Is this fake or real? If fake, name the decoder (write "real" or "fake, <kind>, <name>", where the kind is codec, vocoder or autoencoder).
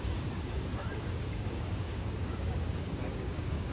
fake, codec, DAC